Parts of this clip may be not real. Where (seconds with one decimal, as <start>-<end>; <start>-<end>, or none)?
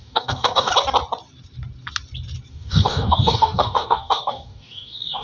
0.0-0.7; 2.5-5.2